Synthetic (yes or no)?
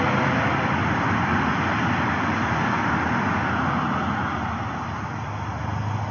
no